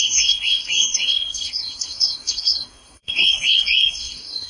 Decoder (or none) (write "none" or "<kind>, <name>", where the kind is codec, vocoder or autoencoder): codec, SNAC